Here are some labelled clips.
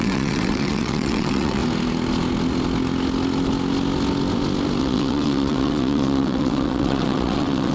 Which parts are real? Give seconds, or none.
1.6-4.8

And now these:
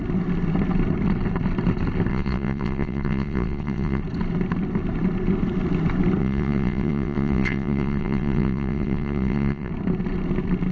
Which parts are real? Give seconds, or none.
0.0-2.1; 4.0-6.2; 9.7-10.7

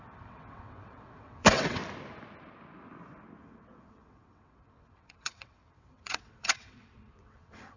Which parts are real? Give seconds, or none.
1.8-3.4